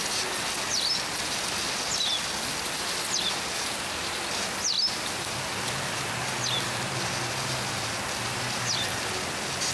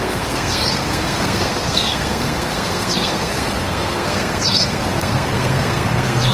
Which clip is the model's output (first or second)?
second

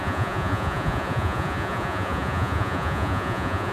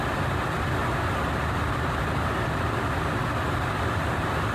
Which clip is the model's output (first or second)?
first